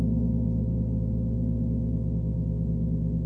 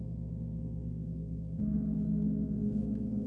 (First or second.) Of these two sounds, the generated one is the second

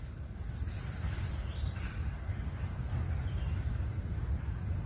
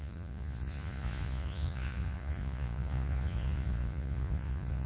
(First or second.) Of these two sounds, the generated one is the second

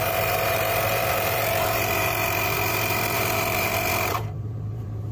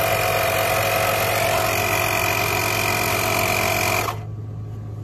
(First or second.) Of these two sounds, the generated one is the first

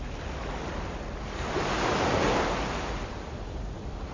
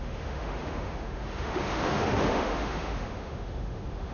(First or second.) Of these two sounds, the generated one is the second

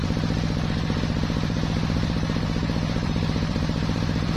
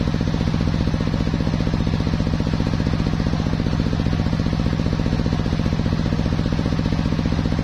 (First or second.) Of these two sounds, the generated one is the first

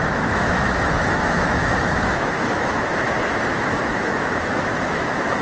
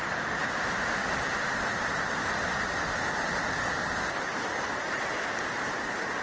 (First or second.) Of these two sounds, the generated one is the first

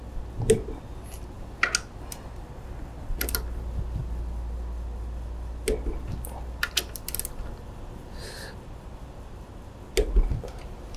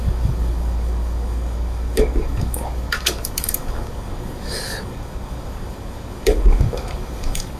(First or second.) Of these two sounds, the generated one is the second